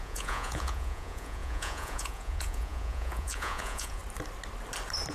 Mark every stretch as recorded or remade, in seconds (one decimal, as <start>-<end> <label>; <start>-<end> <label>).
0.0-4.0 remade; 4.0-5.1 recorded